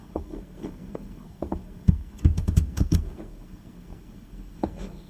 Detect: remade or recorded remade